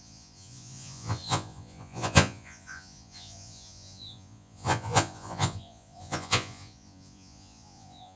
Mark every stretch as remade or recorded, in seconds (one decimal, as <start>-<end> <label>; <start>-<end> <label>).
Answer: 0.0-8.2 remade

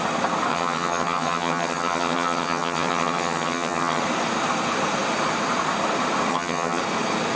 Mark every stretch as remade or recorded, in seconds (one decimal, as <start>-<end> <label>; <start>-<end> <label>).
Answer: 0.0-0.5 recorded; 0.5-4.0 remade; 4.0-6.3 recorded; 6.3-6.8 remade; 6.8-7.4 recorded

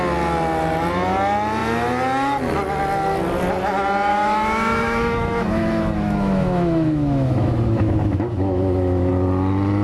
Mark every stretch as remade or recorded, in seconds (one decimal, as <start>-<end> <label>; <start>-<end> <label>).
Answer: 0.0-4.1 recorded; 4.1-9.1 remade; 9.1-9.8 recorded

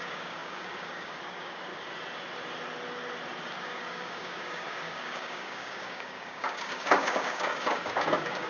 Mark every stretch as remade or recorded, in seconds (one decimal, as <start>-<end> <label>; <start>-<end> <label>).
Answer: 0.0-1.7 remade; 1.7-3.6 recorded; 3.6-8.5 remade

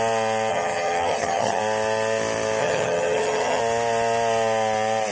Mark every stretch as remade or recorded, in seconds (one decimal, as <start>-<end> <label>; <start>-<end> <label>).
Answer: 0.0-0.5 recorded; 0.5-1.6 remade; 1.6-2.6 recorded; 2.6-3.6 remade; 3.6-5.1 recorded

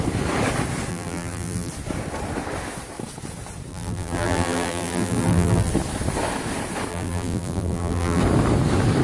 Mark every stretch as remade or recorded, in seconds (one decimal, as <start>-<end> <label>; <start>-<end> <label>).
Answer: 0.0-0.9 recorded; 0.9-1.7 remade; 1.7-3.7 recorded; 3.7-5.7 remade; 5.7-6.9 recorded; 6.9-8.2 remade; 8.2-9.0 recorded

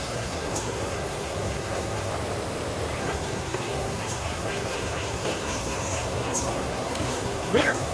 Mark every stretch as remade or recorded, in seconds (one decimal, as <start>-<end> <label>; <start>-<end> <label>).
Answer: 0.0-2.1 remade; 2.1-3.0 recorded; 3.0-7.9 remade

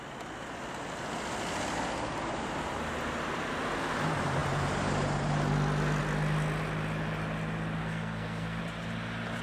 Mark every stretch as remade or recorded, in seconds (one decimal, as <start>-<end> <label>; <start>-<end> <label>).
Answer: 0.0-7.8 recorded; 7.8-8.6 remade; 8.6-9.4 recorded